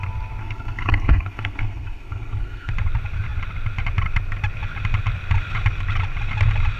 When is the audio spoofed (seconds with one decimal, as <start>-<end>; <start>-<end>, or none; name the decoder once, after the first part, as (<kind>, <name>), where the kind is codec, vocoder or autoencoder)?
0.4-2.7 (codec, SNAC)